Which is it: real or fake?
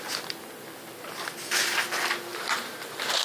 real